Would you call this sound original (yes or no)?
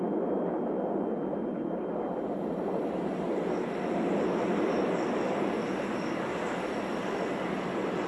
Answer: yes